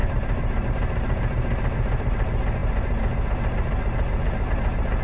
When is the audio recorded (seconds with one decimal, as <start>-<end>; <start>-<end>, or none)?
0.7-5.0